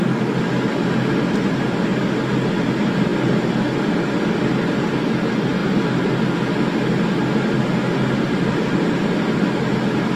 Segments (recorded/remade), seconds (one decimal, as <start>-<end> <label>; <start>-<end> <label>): 0.0-10.2 recorded